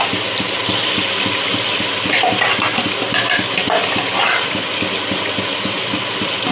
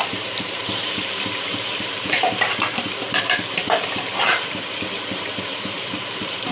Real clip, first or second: first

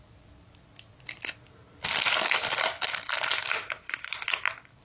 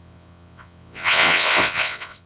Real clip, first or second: first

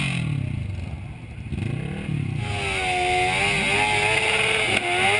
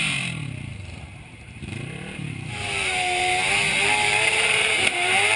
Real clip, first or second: first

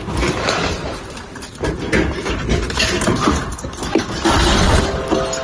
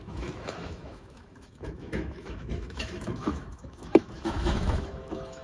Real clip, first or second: first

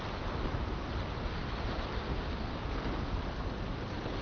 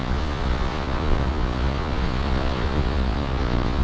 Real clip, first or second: first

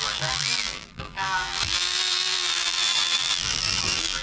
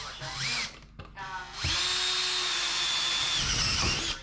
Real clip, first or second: second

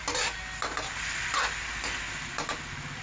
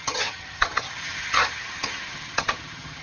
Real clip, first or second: first